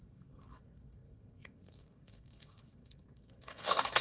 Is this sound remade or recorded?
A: remade